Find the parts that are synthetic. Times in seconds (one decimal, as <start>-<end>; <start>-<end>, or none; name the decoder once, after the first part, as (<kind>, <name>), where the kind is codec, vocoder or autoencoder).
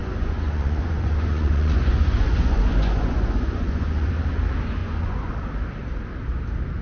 0.0-4.1 (vocoder, Vocos); 4.8-5.3